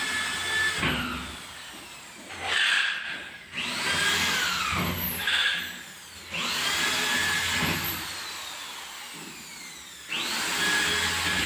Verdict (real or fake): real